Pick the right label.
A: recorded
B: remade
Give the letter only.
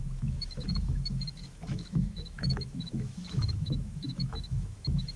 B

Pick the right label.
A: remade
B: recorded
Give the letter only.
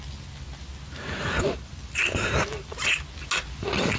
B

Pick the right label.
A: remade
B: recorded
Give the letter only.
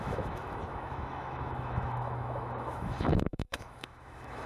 A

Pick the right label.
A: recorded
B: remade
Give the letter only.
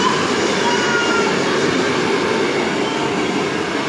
A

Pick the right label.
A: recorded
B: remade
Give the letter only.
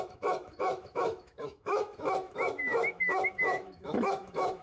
B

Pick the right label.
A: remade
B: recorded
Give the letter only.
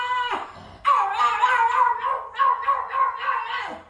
B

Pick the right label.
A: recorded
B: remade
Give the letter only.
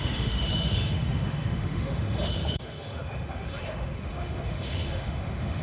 B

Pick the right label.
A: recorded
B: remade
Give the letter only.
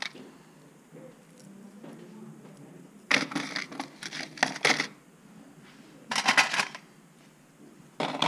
A